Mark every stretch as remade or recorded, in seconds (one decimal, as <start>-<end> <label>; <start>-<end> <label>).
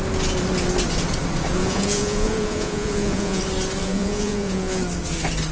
0.0-1.6 recorded; 1.6-3.4 remade; 3.4-3.8 recorded; 3.8-4.8 remade; 4.8-5.5 recorded